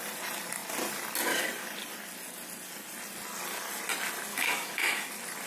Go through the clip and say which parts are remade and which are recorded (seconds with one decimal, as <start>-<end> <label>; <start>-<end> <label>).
0.0-4.3 recorded; 4.3-5.1 remade; 5.1-5.5 recorded